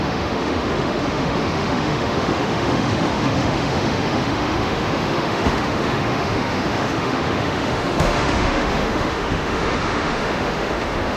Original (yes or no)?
no